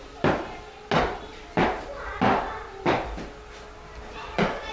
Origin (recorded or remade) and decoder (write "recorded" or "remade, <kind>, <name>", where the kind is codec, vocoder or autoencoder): recorded